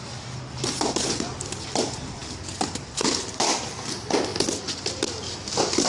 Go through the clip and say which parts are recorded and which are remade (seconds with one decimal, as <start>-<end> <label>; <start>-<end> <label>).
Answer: 0.0-4.3 remade; 4.3-4.9 recorded; 4.9-5.9 remade